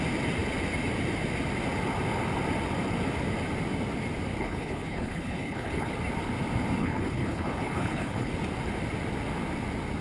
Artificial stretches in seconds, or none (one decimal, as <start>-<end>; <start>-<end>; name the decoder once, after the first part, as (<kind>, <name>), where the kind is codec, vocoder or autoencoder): 4.4-5.9 (codec, HILCodec); 6.8-8.3